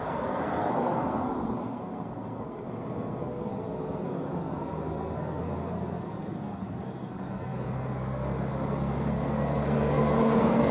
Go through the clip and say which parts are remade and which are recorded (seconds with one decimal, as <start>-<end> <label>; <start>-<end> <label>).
0.0-10.7 remade